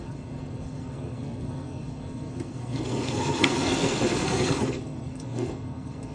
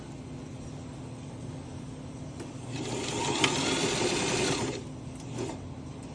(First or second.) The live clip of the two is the second